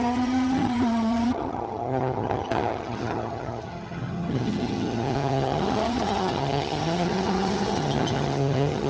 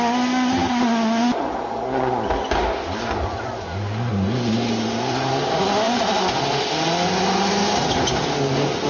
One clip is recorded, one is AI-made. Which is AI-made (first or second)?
first